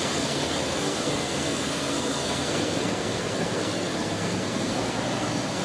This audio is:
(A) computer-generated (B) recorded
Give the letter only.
A